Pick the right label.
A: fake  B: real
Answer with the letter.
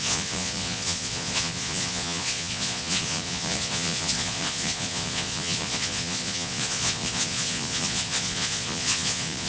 A